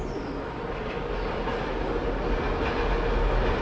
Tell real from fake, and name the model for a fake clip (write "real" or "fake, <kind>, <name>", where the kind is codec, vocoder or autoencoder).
real